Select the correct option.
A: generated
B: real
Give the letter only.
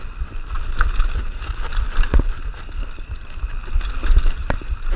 B